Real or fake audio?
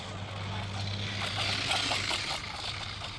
real